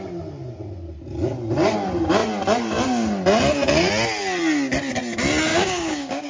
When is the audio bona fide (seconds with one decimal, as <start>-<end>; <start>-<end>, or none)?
0.0-5.5